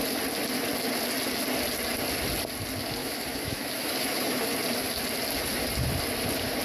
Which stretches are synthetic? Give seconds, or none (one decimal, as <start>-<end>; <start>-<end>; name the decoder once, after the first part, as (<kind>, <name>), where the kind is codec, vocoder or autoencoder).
3.0-4.5 (autoencoder, DAC-VAE)